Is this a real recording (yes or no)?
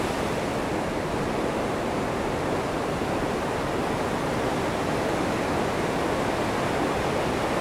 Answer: yes